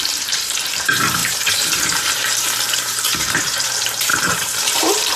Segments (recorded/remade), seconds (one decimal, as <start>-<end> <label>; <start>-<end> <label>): 0.0-5.2 remade